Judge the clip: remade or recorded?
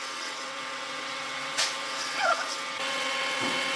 remade